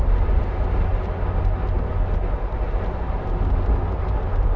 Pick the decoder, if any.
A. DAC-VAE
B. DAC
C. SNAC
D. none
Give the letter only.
D